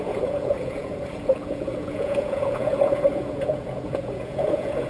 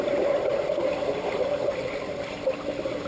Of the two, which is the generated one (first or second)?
first